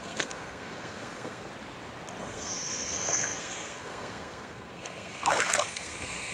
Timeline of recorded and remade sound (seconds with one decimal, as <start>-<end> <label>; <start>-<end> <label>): 0.0-1.5 remade; 1.5-2.2 recorded; 2.2-6.3 remade